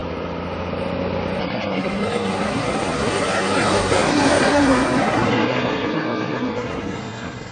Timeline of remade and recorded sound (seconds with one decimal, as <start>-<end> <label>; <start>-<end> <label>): 0.0-1.4 recorded; 1.4-7.5 remade